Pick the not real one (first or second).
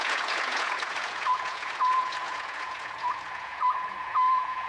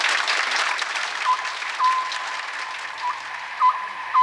first